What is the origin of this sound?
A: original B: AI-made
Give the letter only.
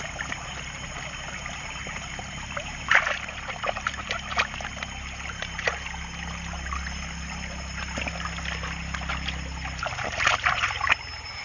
A